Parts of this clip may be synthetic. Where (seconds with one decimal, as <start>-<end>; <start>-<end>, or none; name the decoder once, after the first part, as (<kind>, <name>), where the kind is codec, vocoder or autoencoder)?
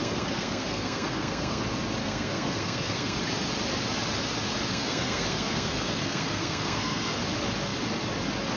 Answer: 0.0-1.6 (codec, SNAC); 2.0-3.2; 4.7-7.2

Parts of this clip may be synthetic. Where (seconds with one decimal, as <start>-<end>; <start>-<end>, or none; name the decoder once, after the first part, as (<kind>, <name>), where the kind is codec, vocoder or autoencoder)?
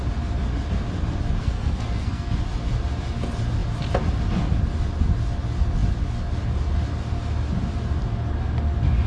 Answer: 1.4-2.4 (codec, SNAC)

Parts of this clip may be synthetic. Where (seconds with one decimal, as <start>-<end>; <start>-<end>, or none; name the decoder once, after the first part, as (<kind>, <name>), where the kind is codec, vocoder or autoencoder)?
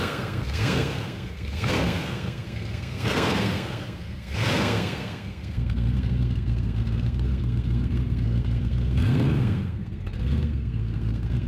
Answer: 0.0-11.5 (codec, SNAC)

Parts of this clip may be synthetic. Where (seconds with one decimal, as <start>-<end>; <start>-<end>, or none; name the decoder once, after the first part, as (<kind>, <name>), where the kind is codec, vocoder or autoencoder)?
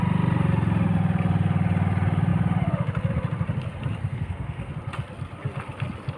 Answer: 4.0-4.7 (codec, SNAC)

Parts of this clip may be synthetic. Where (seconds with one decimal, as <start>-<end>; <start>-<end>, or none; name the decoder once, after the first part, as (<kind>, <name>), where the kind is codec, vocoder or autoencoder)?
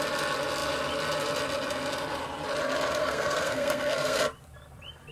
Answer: 3.0-4.2 (codec, SNAC)